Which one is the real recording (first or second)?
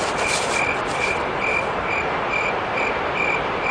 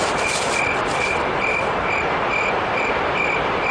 first